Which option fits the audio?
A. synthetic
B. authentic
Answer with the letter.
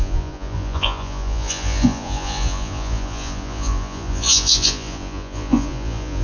A